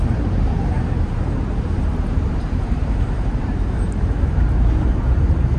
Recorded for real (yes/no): no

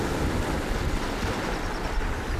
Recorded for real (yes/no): yes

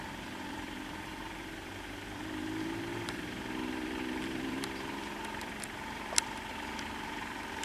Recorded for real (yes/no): no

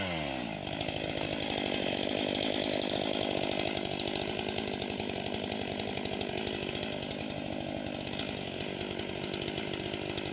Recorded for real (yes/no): yes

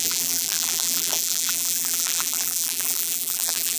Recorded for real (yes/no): no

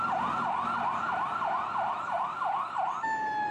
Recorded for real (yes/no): yes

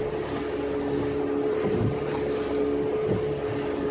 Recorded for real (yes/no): yes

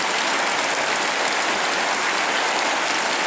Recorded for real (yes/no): yes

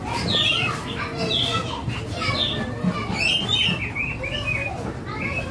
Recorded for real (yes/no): yes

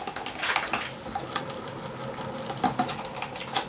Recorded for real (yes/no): yes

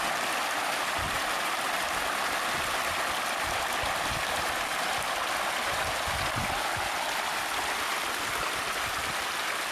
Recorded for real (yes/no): no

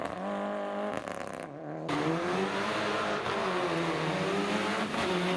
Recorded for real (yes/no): yes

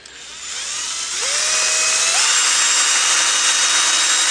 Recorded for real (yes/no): yes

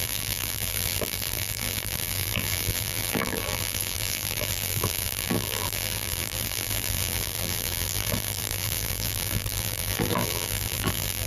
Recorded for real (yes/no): no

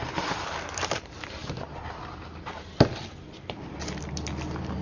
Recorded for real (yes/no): no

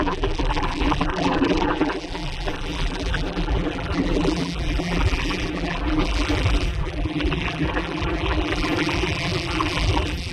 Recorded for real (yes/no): no